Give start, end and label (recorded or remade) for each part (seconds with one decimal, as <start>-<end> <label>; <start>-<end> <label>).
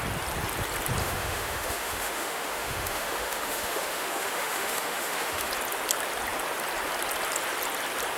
0.0-1.0 recorded; 1.0-5.5 remade; 5.5-8.2 recorded